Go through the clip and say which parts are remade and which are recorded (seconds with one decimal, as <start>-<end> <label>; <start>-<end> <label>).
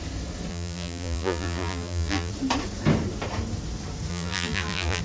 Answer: 0.0-0.5 recorded; 0.5-2.3 remade; 2.3-4.1 recorded; 4.1-5.0 remade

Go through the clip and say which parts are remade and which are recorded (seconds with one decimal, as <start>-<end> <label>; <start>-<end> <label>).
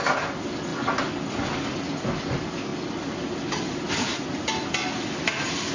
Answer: 0.0-5.7 recorded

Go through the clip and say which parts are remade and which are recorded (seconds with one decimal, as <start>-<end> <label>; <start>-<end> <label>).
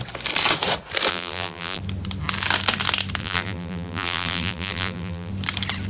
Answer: 0.0-1.1 recorded; 1.1-1.8 remade; 1.8-3.2 recorded; 3.2-5.3 remade; 5.3-5.9 recorded